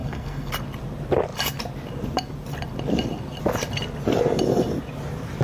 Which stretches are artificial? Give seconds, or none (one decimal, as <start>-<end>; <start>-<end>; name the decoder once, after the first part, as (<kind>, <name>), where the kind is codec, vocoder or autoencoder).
0.0-0.5 (codec, SNAC)